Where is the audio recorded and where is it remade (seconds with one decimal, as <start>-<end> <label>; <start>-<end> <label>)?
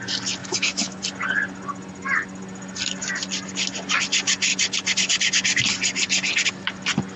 0.0-0.4 recorded; 0.4-1.0 remade; 1.0-7.2 recorded